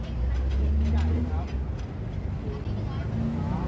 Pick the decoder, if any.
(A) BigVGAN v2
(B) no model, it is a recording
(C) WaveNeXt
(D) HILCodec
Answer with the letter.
B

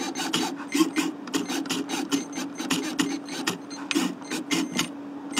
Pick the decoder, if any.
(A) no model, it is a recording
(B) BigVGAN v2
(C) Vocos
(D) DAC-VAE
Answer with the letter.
A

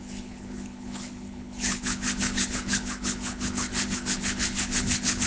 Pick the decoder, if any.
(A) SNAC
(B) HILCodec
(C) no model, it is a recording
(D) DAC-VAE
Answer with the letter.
B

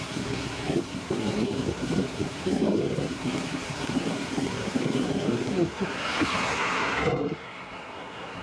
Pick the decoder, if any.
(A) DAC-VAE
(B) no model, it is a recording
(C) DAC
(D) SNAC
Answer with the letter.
D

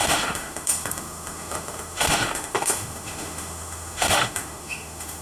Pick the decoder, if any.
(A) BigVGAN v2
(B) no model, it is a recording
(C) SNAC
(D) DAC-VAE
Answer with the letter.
D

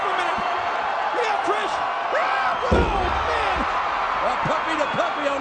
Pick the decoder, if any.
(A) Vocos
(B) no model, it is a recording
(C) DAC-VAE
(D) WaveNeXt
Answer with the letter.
B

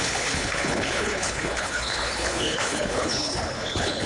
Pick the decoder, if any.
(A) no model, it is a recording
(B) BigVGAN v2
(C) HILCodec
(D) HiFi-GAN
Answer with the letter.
C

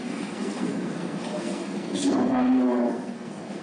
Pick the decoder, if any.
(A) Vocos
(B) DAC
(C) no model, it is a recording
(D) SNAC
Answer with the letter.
D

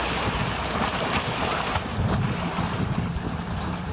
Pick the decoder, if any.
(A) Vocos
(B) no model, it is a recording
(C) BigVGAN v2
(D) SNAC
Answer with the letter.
C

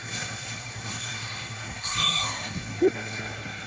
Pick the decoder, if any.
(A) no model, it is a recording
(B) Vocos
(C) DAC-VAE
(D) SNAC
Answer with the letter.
D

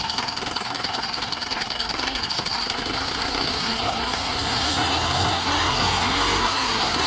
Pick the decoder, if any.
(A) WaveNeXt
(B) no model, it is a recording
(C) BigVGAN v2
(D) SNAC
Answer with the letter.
D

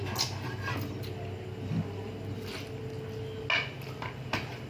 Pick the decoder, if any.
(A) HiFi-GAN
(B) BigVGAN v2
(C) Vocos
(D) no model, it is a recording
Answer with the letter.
D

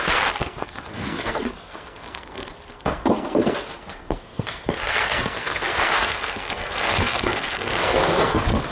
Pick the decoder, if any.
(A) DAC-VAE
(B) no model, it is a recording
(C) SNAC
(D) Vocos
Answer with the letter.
C